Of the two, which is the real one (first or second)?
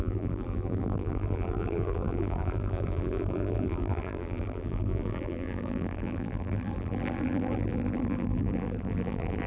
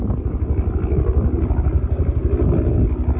second